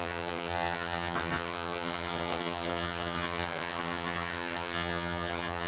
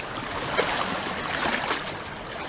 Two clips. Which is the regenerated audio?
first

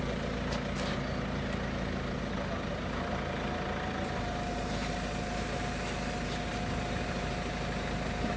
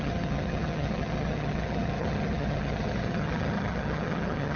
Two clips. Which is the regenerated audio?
second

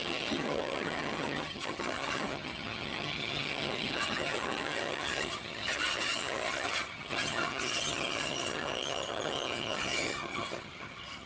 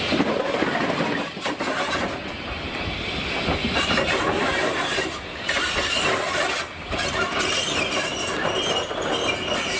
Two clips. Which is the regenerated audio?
first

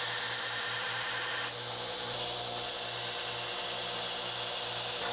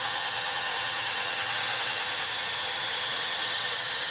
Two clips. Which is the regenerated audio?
second